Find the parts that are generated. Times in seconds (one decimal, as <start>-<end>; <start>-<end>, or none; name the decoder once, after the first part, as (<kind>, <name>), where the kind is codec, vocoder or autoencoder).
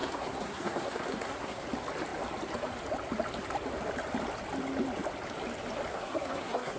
0.0-1.6 (codec, SNAC); 5.9-6.8